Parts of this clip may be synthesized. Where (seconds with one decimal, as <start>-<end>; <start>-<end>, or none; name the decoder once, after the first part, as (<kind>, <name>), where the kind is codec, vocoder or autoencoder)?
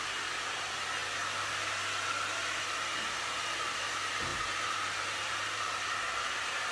4.3-5.6 (vocoder, BigVGAN v2)